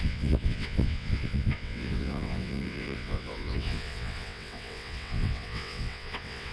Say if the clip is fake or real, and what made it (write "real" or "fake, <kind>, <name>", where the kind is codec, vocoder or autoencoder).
fake, vocoder, WaveNeXt